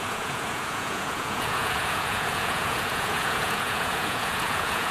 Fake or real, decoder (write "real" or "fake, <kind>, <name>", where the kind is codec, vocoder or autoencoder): fake, vocoder, Vocos